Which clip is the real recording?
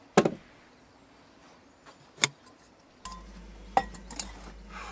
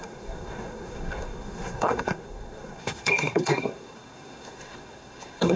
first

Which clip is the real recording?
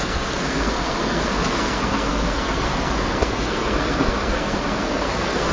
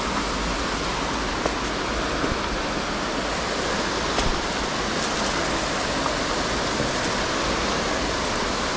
second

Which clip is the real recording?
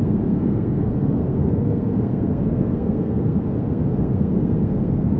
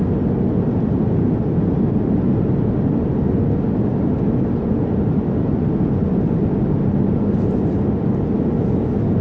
second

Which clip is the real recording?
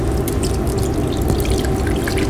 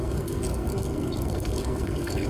first